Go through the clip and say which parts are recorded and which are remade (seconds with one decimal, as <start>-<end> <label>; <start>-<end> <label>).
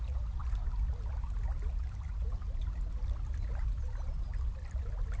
0.0-5.2 recorded